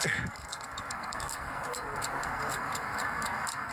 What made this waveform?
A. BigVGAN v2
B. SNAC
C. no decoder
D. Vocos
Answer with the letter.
B